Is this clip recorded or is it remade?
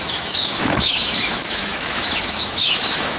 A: remade